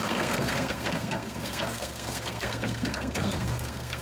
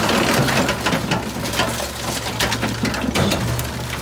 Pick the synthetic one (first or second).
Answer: first